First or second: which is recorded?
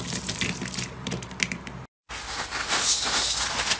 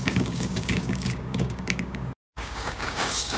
first